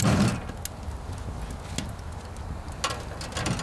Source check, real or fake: real